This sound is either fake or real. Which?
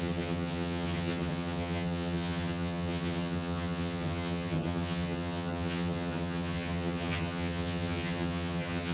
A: fake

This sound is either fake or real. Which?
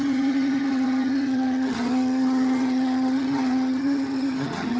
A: fake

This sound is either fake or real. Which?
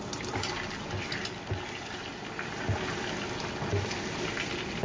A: real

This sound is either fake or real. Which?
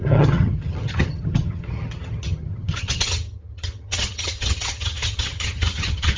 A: fake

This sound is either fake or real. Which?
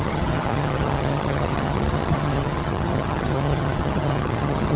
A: fake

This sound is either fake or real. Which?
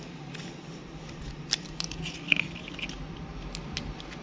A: real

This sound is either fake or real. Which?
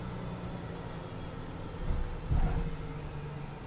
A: real